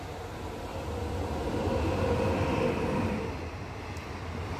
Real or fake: real